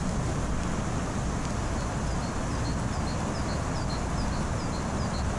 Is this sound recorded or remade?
recorded